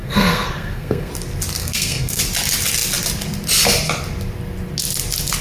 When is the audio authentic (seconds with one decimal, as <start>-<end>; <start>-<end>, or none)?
1.1-1.6; 2.2-5.4